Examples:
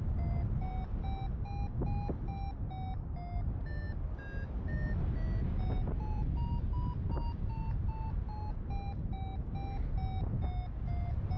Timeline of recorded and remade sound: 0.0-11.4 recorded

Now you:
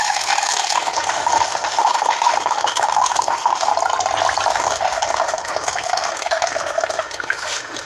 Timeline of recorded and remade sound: 0.0-3.7 remade; 3.7-4.5 recorded; 4.5-7.9 remade

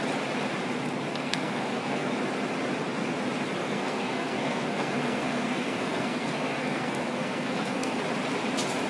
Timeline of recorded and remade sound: 0.0-1.1 recorded; 1.1-2.2 remade; 2.2-3.6 recorded; 3.6-8.0 remade; 8.0-8.9 recorded

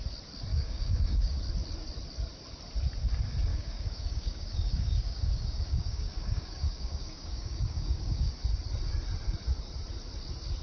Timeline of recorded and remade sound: 0.0-0.5 recorded; 0.5-1.4 remade; 1.4-3.5 recorded; 3.5-8.3 remade; 8.3-10.6 recorded

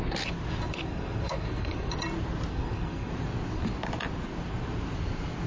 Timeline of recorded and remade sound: 0.0-0.8 recorded; 0.8-1.9 remade; 1.9-2.5 recorded; 2.5-3.1 remade; 3.1-5.5 recorded